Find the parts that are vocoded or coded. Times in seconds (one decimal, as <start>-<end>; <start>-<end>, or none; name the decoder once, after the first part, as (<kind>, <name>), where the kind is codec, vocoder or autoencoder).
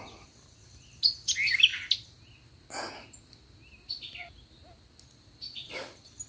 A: none